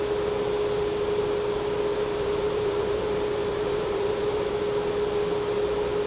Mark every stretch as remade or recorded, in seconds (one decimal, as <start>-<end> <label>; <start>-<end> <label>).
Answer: 0.0-1.9 recorded; 1.9-4.5 remade; 4.5-6.1 recorded